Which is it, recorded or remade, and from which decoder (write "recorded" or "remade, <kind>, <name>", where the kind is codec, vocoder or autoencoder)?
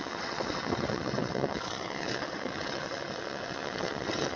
remade, vocoder, WaveNeXt